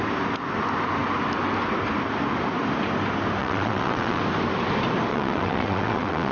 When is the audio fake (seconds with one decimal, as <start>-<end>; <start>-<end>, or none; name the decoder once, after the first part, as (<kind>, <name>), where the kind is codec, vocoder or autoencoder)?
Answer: 3.4-4.2 (vocoder, WaveNeXt); 5.1-6.3